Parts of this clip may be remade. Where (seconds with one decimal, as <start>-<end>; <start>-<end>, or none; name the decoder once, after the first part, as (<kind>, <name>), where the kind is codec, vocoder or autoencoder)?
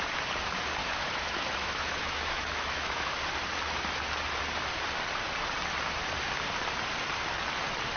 0.8-3.1 (autoencoder, DAC-VAE)